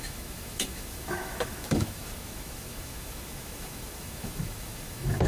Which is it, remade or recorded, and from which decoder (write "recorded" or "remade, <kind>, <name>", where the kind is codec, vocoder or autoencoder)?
remade, autoencoder, DAC-VAE